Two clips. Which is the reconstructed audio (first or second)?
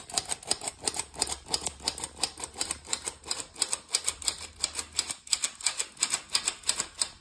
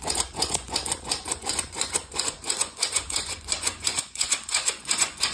second